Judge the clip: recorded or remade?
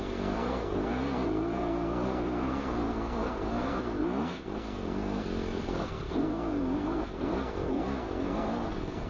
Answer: remade